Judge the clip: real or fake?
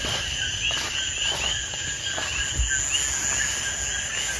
real